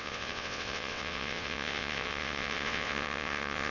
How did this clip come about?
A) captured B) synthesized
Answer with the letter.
B